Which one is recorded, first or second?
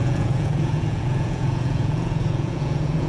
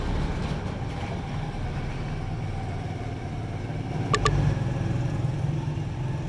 second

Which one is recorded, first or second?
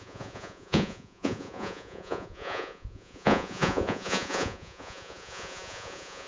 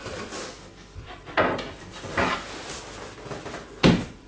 second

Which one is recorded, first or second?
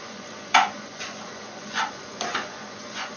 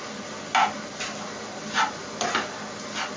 second